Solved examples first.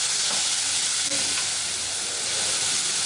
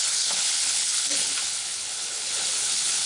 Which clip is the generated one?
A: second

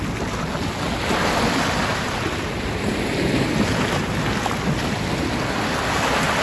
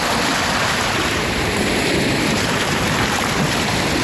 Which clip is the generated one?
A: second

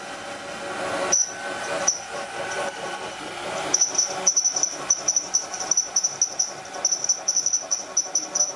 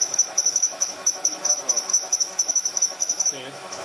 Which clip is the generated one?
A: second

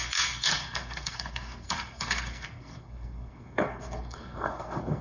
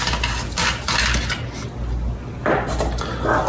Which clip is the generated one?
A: first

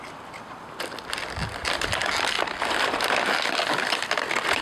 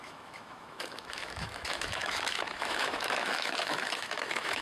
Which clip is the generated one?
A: second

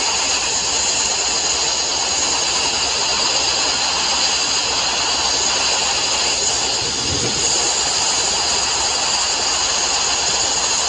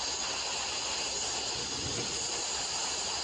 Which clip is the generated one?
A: second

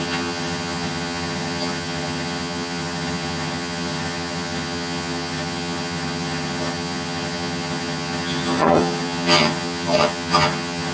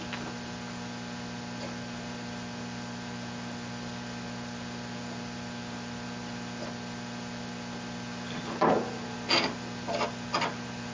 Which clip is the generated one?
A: first